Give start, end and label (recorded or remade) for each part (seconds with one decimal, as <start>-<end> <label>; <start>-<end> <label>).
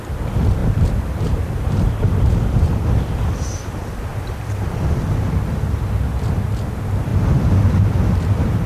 0.0-0.6 recorded; 0.6-2.7 remade; 2.7-8.7 recorded